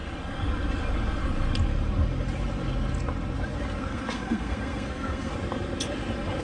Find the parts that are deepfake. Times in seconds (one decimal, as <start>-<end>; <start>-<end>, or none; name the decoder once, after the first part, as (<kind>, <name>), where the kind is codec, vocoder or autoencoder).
3.8-5.3 (codec, SNAC)